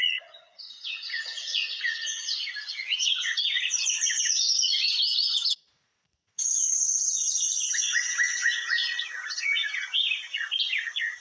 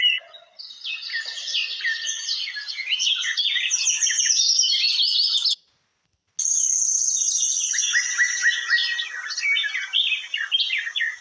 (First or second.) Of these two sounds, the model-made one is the first